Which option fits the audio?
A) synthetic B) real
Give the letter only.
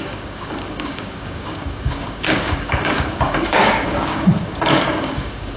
A